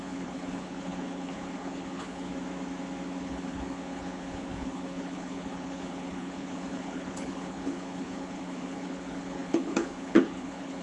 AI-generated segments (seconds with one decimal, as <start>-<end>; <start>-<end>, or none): 0.0-2.3; 3.2-10.8